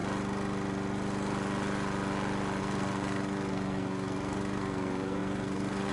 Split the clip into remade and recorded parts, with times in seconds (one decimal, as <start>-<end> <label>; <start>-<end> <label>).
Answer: 0.0-2.6 recorded; 2.6-5.9 remade